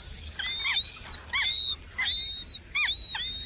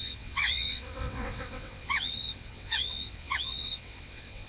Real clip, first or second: first